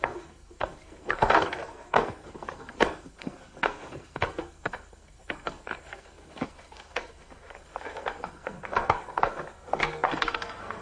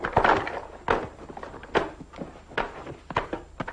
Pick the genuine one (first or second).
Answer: second